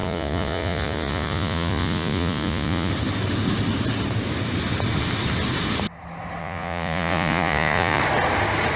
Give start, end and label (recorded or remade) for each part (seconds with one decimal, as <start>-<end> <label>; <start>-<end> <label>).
0.0-2.9 remade; 2.9-6.4 recorded; 6.4-8.0 remade; 8.0-8.8 recorded